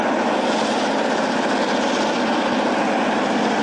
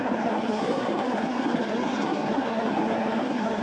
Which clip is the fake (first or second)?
second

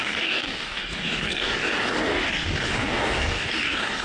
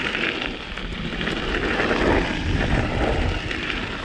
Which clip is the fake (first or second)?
first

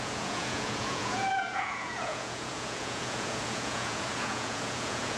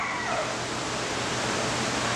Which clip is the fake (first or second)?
first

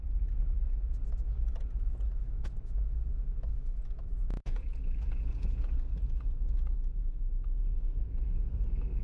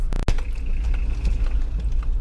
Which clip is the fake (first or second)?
first